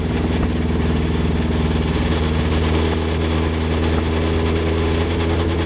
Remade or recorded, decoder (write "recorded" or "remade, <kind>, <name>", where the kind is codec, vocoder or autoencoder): recorded